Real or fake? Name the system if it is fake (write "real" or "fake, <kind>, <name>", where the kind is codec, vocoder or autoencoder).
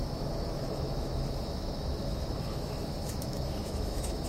fake, autoencoder, DAC-VAE